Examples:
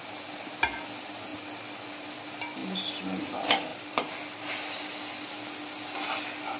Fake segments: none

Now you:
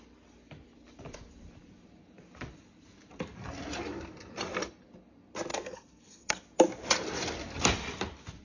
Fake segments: 5.5-6.4 (codec, SNAC)

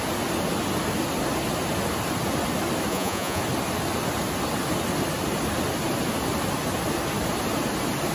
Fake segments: 2.9-3.4 (vocoder, Vocos)

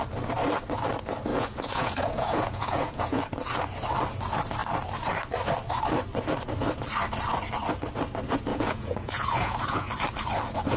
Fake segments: 1.3-3.2 (vocoder, Vocos); 8.5-9.9

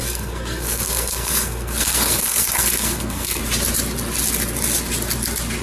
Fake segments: 0.0-3.4 (codec, SNAC)

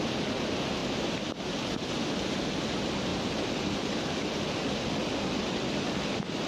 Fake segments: 0.8-1.9 (vocoder, BigVGAN v2); 3.1-4.9

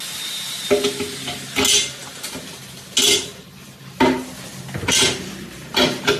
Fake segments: none